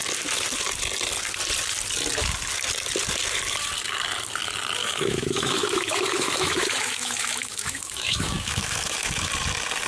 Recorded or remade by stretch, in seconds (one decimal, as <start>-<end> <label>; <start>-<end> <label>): 0.0-4.8 recorded; 4.8-9.3 remade; 9.3-9.9 recorded